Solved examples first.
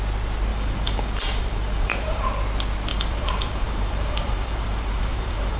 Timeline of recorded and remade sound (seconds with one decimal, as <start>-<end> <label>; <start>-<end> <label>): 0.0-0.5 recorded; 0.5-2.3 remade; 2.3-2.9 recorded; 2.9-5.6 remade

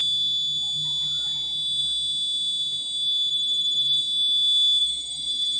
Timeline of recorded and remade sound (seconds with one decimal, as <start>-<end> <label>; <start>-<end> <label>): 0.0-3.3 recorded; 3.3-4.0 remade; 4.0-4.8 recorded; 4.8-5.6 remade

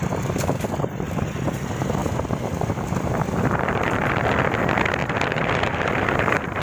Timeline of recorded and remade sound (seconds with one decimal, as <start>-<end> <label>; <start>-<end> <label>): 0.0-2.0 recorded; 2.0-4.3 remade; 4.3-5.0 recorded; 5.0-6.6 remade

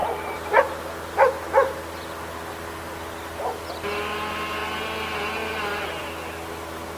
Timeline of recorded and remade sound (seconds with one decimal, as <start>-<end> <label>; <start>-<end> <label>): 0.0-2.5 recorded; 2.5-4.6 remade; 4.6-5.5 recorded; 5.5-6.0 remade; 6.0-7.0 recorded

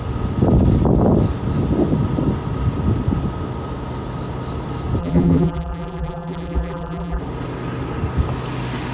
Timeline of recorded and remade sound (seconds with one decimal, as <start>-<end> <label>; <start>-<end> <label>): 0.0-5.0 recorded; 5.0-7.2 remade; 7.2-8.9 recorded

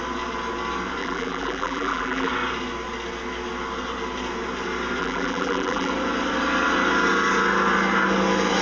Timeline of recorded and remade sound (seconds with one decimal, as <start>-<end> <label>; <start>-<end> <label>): 0.0-1.0 recorded; 1.0-2.3 remade; 2.3-5.0 recorded; 5.0-5.9 remade; 5.9-8.6 recorded

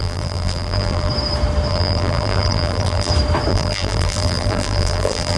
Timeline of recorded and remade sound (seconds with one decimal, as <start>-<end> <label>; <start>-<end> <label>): 0.0-1.1 remade; 1.1-1.7 recorded; 1.7-3.1 remade; 3.1-3.5 recorded; 3.5-5.4 remade